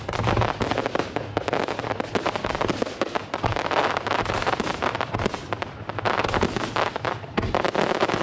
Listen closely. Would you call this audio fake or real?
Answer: real